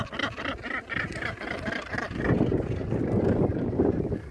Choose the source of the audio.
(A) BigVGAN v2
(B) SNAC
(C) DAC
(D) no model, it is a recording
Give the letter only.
D